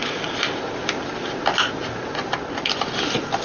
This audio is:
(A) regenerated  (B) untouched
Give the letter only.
B